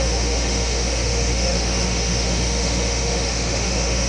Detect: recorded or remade remade